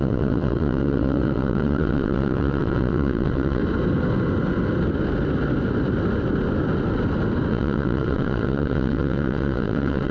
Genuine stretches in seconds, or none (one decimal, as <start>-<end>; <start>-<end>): 3.6-7.5